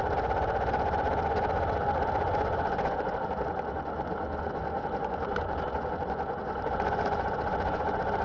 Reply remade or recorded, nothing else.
remade